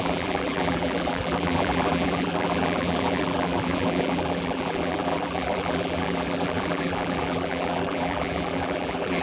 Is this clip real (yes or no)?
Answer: no